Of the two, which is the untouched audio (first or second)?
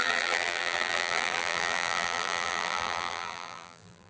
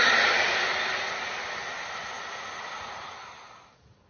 second